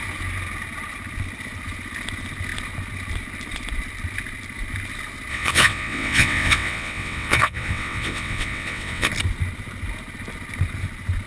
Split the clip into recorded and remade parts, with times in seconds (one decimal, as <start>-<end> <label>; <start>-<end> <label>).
0.0-5.3 recorded; 5.3-9.1 remade; 9.1-11.3 recorded